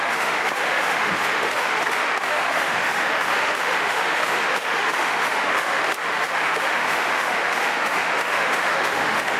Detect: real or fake fake